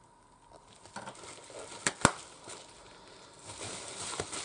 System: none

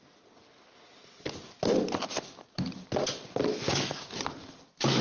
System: none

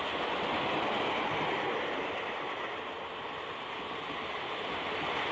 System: none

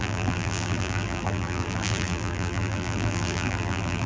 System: vocoder, BigVGAN v2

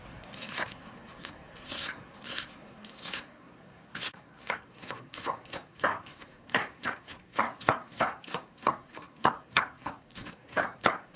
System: codec, SNAC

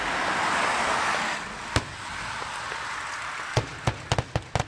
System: none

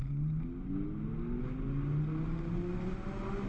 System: none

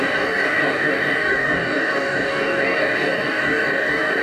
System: codec, DAC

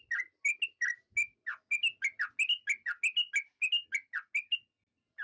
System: none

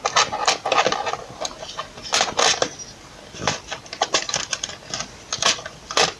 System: none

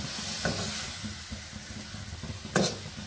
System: none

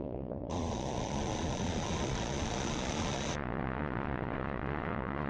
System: vocoder, Vocos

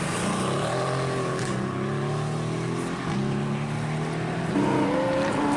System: none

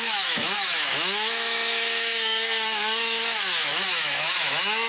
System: autoencoder, DAC-VAE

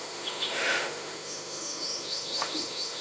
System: autoencoder, DAC-VAE